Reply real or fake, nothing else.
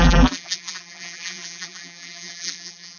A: fake